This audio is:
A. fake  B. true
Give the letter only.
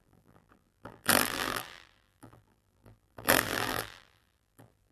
A